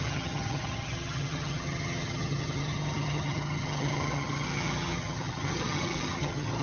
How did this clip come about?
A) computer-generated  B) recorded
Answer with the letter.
A